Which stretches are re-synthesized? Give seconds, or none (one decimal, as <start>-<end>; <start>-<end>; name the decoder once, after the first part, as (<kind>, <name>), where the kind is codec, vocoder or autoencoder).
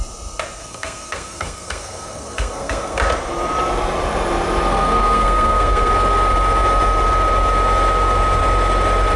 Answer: 0.6-3.0 (codec, SNAC); 4.7-5.9